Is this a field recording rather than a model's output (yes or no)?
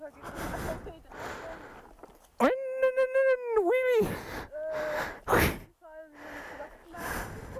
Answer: yes